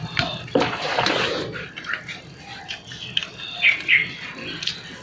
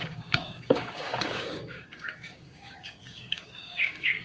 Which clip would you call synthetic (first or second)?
second